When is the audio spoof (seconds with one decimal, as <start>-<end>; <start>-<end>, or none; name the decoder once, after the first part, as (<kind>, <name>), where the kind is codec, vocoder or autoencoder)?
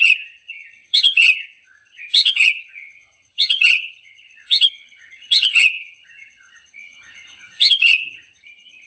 0.0-8.9 (vocoder, HiFi-GAN)